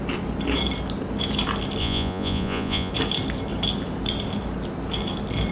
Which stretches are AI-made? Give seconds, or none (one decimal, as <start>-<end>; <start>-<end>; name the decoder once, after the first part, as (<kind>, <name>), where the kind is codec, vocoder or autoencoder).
1.8-2.9 (vocoder, Vocos)